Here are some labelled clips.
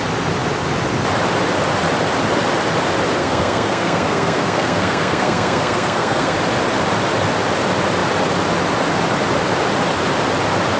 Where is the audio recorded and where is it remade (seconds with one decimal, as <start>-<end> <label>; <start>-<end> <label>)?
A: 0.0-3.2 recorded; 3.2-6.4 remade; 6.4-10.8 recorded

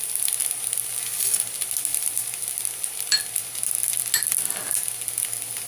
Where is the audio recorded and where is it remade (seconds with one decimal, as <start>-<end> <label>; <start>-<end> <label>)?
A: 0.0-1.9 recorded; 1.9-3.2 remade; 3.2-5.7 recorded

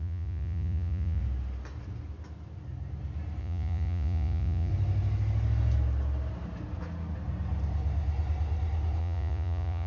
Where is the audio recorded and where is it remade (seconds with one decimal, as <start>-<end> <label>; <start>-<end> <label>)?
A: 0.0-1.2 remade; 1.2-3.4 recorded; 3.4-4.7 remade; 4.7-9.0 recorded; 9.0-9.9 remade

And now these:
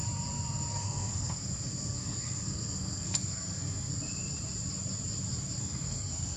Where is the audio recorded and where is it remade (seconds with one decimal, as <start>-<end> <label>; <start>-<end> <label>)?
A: 0.0-0.7 recorded; 0.7-3.9 remade; 3.9-5.6 recorded; 5.6-6.4 remade

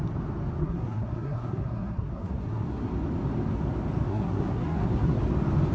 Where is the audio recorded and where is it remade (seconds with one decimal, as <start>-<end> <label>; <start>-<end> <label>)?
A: 0.0-0.6 recorded; 0.6-2.9 remade; 2.9-4.1 recorded; 4.1-5.2 remade; 5.2-5.7 recorded

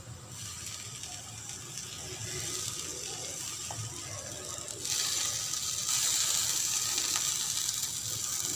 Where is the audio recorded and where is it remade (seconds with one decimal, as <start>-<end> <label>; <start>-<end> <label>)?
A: 0.0-8.6 recorded